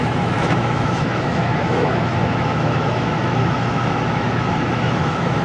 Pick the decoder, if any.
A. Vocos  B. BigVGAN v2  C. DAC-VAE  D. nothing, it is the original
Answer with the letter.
C